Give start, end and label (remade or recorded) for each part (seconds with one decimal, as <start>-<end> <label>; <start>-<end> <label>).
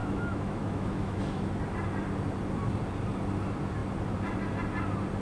0.0-1.5 remade; 1.5-5.2 recorded